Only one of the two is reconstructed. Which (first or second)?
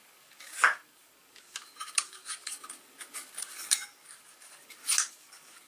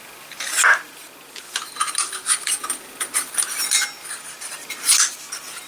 first